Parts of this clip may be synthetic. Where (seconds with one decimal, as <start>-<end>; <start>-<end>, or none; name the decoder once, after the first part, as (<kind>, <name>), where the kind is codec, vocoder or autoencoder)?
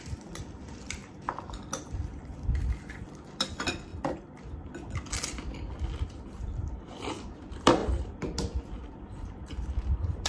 0.0-1.0 (vocoder, BigVGAN v2); 3.0-3.9; 6.1-7.8; 8.9-10.3